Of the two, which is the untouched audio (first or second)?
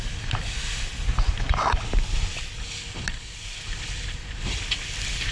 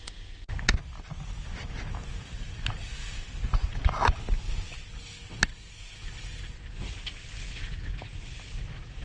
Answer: second